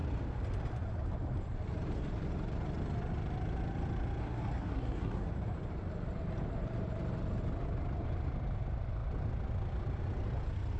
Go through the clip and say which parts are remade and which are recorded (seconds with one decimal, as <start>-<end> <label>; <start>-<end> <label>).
0.0-4.2 recorded; 4.2-5.3 remade; 5.3-10.8 recorded